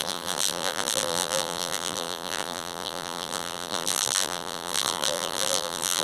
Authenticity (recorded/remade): remade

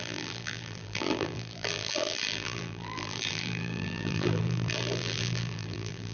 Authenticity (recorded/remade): remade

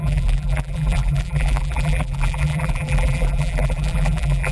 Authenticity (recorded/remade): remade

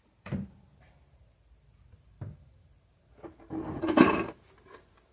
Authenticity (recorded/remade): remade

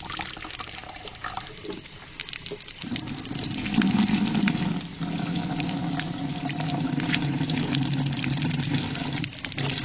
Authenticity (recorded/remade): recorded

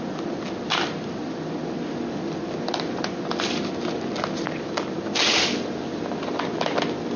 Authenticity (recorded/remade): recorded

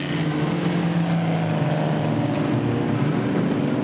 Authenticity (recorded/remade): recorded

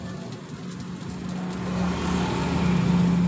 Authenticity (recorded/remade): recorded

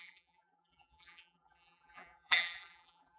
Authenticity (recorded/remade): remade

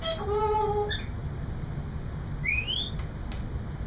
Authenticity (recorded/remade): recorded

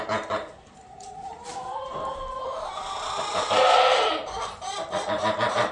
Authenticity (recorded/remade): recorded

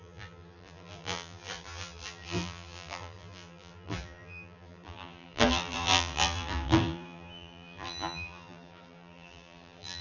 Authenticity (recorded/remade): remade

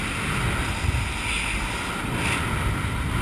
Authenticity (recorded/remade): recorded